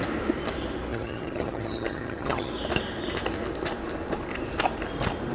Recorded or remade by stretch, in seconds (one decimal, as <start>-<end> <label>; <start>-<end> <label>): 0.0-0.9 recorded; 0.9-2.5 remade; 2.5-5.3 recorded